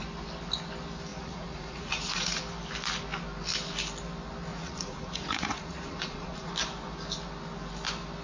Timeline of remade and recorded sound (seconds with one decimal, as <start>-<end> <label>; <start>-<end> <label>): 0.0-1.1 recorded; 1.1-2.4 remade; 2.4-4.5 recorded; 4.5-6.5 remade; 6.5-8.2 recorded